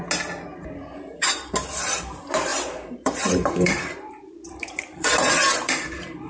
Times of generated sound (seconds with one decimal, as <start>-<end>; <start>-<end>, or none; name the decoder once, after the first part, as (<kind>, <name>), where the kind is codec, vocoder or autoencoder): 0.5-1.5 (vocoder, BigVGAN v2); 2.5-6.3